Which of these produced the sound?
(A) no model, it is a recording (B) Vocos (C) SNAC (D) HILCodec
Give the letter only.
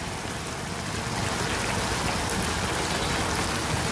A